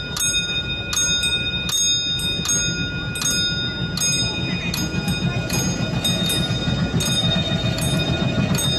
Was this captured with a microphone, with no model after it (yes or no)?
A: yes